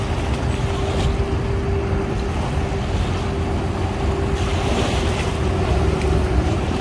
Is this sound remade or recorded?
recorded